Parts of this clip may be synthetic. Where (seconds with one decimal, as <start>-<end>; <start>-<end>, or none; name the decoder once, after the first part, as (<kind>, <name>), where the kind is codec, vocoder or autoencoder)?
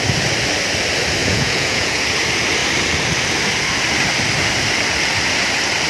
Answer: 1.2-2.0 (vocoder, Vocos)